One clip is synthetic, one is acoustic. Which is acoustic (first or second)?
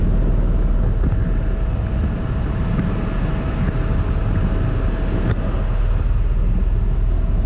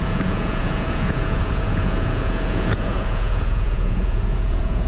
first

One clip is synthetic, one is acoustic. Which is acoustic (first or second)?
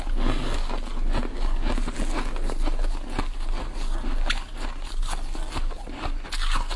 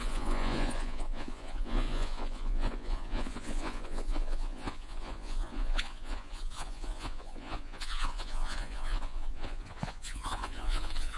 first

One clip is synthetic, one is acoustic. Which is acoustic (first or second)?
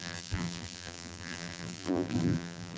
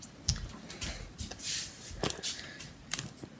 second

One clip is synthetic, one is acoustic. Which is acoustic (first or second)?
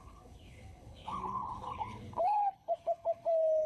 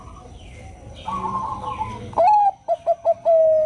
second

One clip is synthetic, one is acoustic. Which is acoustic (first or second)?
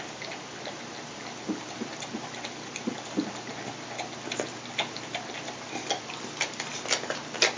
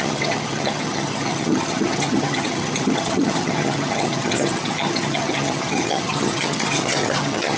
first